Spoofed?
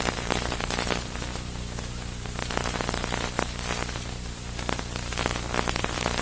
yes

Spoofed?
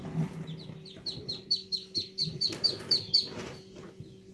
no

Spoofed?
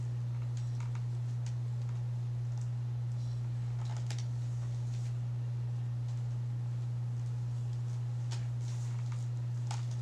no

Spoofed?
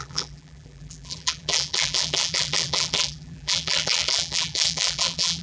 yes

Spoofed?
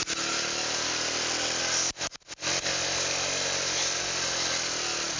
no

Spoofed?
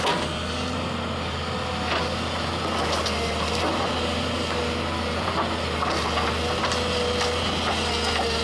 no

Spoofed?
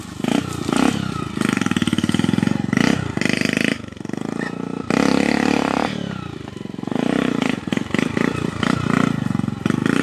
no